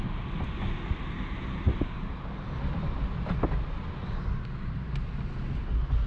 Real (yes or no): yes